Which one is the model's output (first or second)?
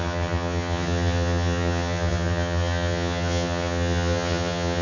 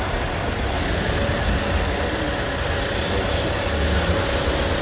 first